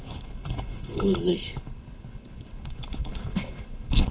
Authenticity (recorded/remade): remade